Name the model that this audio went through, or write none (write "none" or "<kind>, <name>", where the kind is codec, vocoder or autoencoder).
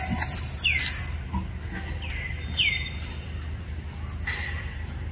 none